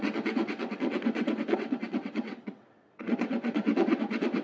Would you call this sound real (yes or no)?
no